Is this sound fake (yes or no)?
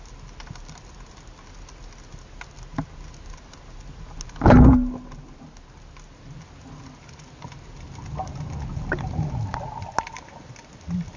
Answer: no